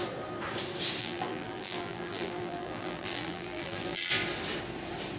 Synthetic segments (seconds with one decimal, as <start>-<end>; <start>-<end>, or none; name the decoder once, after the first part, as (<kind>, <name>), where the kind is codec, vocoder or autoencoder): 1.0-4.1 (vocoder, BigVGAN v2)